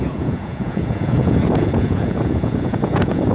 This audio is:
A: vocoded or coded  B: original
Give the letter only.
A